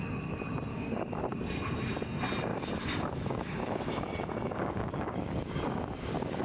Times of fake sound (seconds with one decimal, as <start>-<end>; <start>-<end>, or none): 0.7-1.2; 2.5-6.4